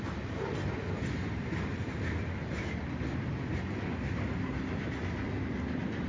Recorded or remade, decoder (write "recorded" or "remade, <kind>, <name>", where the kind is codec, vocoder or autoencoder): recorded